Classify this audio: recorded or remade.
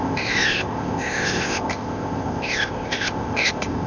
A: remade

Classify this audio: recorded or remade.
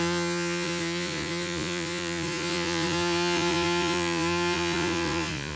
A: remade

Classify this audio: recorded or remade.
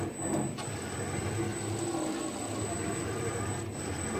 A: recorded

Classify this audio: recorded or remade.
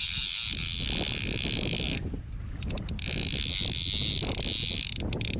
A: recorded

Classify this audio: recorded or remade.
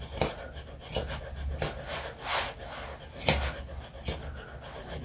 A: recorded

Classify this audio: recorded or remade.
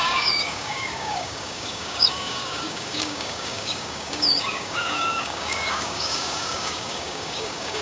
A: remade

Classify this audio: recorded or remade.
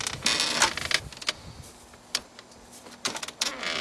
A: recorded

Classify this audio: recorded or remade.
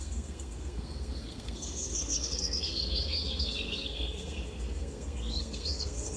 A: remade